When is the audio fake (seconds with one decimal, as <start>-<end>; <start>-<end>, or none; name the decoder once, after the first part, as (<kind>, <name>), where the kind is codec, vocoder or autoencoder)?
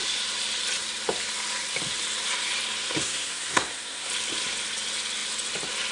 3.0-4.1 (codec, SNAC)